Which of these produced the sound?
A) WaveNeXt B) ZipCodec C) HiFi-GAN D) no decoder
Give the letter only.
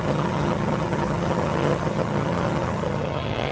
C